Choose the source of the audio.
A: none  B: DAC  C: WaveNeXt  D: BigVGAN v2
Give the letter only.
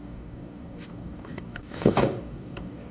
B